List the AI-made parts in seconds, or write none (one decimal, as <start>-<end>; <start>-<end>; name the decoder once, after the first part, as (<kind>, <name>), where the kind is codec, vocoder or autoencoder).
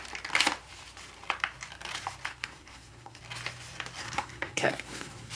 2.3-3.2 (codec, SNAC); 4.0-5.3